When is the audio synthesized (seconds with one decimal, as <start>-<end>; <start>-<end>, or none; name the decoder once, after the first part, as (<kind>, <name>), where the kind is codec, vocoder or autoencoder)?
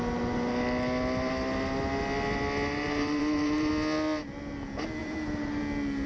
2.7-3.7 (vocoder, BigVGAN v2); 5.0-5.6